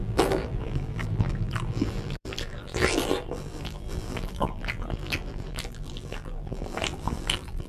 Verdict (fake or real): fake